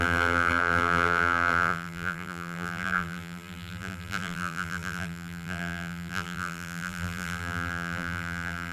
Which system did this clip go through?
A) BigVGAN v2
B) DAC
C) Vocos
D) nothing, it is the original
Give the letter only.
A